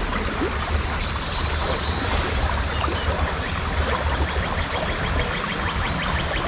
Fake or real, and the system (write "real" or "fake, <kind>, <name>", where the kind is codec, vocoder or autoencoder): real